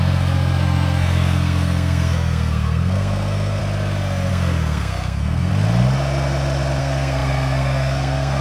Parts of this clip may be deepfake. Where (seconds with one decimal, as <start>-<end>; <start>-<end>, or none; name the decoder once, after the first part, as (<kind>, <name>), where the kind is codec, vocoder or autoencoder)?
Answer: 0.0-3.6 (codec, SNAC); 4.3-5.5; 6.8-8.4